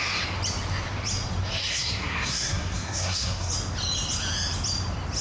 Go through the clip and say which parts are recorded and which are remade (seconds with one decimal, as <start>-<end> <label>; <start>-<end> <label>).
0.0-1.7 recorded; 1.7-3.5 remade; 3.5-5.2 recorded